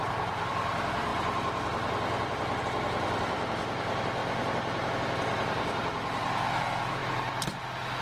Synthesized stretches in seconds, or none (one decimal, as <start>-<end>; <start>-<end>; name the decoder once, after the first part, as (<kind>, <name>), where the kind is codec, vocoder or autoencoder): 0.0-4.2 (vocoder, BigVGAN v2); 4.9-7.0